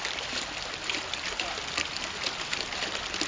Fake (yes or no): no